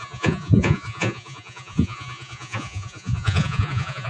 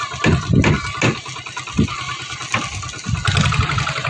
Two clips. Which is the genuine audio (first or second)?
second